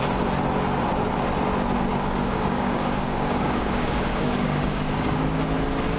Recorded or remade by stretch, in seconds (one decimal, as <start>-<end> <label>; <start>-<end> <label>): 0.0-1.9 recorded; 1.9-5.4 remade; 5.4-6.0 recorded